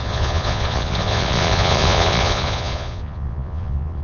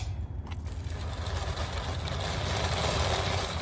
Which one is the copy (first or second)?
first